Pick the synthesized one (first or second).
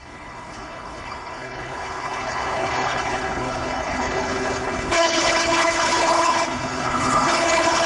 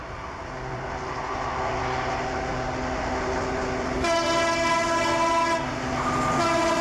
first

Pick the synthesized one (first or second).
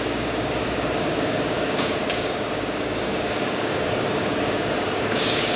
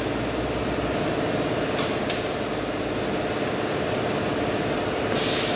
first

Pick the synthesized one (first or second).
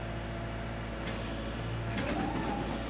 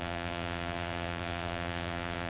second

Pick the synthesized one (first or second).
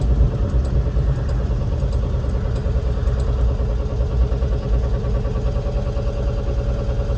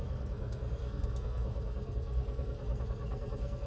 second